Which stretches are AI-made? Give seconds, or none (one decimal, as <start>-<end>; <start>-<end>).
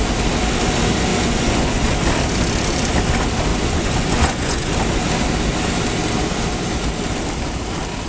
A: 1.1-1.9; 3.5-4.7